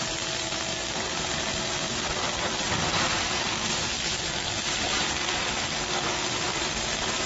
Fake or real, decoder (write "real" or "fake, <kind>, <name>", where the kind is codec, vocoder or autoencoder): real